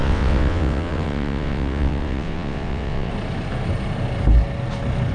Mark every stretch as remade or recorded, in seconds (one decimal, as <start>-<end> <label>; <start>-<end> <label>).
0.0-3.1 remade; 3.1-5.1 recorded